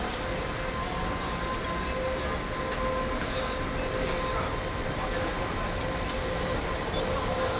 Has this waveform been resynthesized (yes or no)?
no